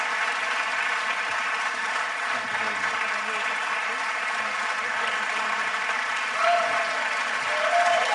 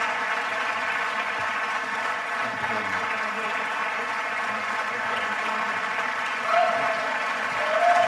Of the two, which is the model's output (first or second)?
second